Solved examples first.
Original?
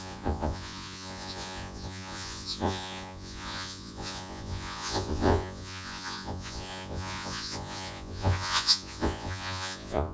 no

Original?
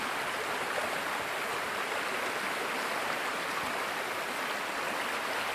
yes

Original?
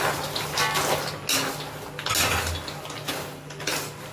yes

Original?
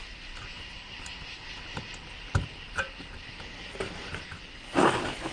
yes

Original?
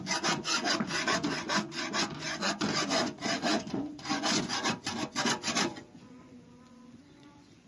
no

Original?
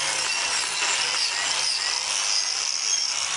yes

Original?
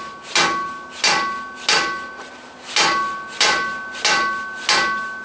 yes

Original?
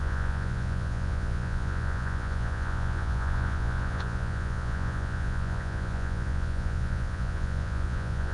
no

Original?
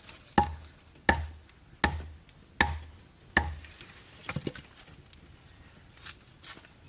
yes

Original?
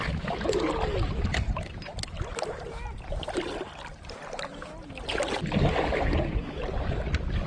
yes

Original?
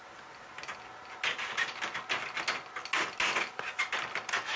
yes